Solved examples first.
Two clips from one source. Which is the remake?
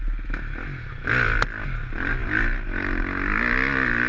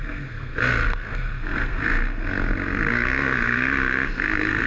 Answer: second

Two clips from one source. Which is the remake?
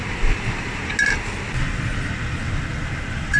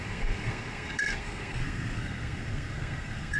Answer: second